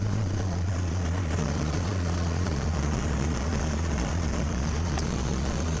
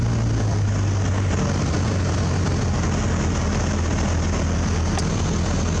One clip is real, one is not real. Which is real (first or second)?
second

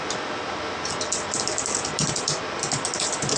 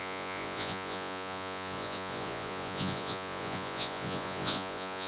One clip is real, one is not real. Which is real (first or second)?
first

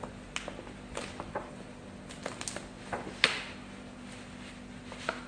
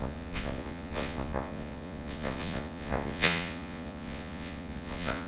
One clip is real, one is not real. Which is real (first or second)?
first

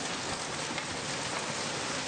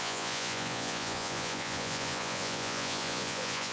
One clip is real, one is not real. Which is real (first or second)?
first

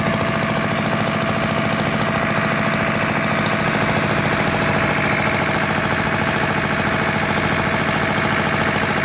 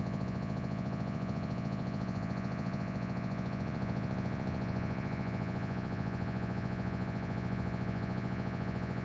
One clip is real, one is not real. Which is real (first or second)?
first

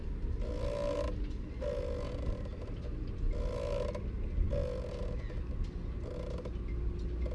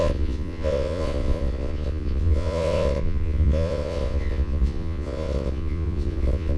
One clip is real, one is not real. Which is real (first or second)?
first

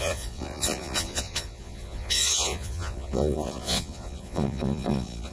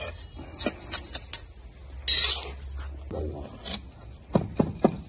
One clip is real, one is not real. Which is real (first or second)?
second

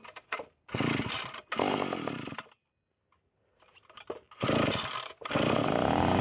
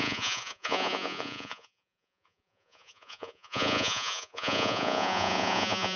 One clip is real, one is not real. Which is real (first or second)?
first